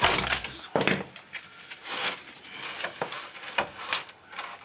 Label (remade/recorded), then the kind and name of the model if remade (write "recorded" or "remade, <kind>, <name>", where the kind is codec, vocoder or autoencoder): recorded